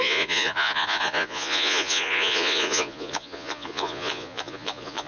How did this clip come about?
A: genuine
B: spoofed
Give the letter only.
B